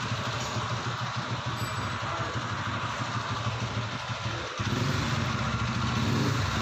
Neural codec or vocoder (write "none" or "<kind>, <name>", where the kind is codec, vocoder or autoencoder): none